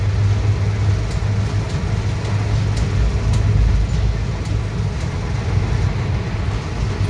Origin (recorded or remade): recorded